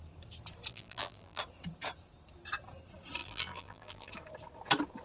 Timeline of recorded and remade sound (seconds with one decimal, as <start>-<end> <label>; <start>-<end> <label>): 0.0-0.7 recorded; 0.7-1.4 remade; 1.4-3.2 recorded; 3.2-4.1 remade; 4.1-5.0 recorded